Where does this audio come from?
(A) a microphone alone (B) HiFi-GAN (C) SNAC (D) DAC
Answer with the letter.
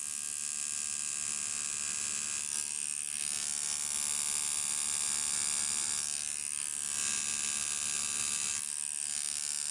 A